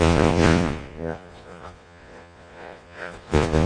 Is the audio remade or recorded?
remade